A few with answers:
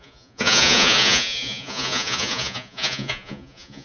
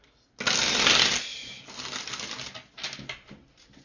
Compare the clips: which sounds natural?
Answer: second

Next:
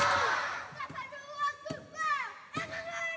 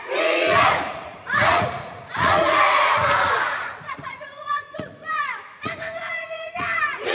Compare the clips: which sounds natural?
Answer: first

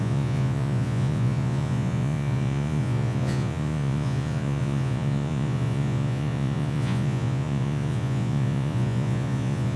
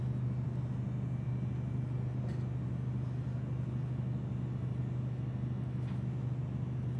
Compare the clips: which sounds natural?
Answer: second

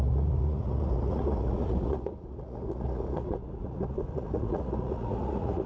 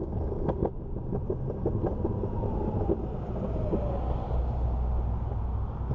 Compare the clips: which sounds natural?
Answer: second